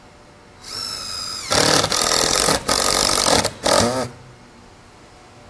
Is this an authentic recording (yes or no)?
yes